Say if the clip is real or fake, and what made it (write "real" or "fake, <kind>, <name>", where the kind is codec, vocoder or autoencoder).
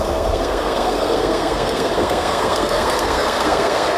fake, codec, SNAC